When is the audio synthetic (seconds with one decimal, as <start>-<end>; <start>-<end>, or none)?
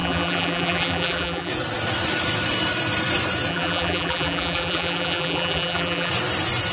0.0-1.5; 3.5-6.1